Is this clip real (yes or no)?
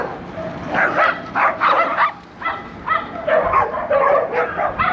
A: yes